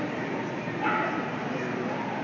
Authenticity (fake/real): real